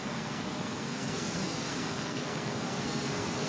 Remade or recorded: remade